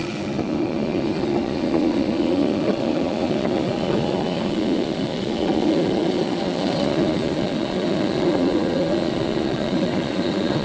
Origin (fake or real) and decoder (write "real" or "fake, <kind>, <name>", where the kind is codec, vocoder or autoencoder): fake, vocoder, Vocos